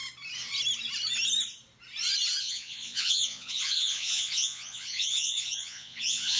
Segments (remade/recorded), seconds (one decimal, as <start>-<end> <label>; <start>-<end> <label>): 0.0-2.4 recorded; 2.4-6.4 remade